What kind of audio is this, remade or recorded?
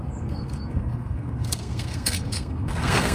remade